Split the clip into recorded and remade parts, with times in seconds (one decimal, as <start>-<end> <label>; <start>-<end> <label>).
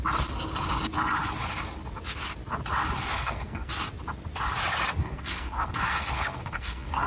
0.0-3.1 recorded; 3.1-3.7 remade; 3.7-5.0 recorded; 5.0-7.1 remade